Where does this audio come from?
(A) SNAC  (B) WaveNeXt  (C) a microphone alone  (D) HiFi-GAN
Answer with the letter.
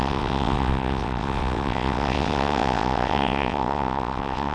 B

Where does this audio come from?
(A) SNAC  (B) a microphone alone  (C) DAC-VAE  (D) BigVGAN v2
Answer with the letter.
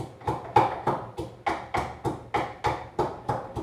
B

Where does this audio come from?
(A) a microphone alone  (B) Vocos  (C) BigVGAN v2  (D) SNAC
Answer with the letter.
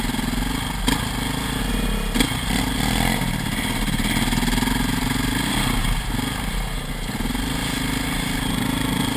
A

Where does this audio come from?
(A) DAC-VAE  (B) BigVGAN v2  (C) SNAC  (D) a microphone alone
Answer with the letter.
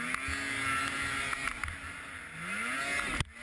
D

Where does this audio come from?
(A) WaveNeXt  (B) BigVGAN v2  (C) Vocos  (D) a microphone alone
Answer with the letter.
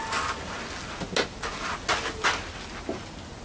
D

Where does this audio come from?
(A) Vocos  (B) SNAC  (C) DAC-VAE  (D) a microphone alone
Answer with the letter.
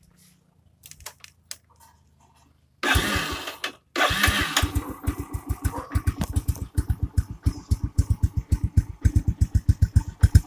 D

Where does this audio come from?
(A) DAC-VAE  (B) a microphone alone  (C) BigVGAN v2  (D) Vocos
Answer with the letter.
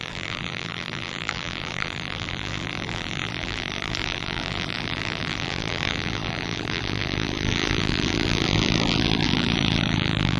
C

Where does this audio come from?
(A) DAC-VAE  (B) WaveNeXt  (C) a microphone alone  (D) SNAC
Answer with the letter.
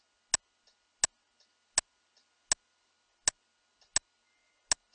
C